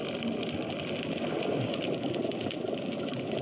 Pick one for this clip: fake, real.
real